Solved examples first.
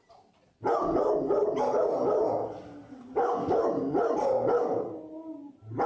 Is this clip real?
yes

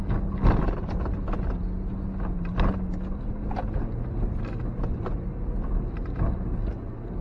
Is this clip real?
yes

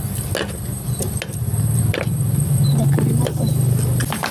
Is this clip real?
yes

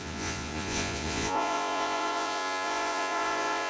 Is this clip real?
no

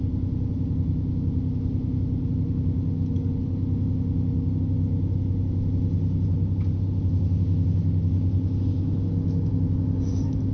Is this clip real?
yes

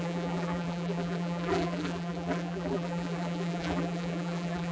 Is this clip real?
no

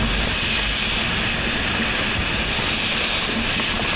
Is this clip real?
yes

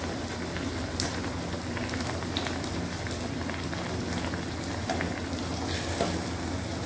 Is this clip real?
yes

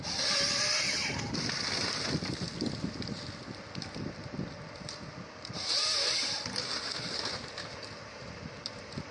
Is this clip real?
yes